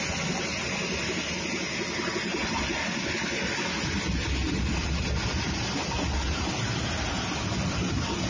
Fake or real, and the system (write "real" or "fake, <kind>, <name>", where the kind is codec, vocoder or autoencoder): real